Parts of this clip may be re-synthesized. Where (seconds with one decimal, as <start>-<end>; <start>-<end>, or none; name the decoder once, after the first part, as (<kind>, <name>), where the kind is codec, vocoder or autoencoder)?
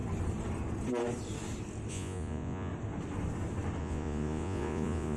1.9-2.7 (vocoder, Vocos); 3.8-5.2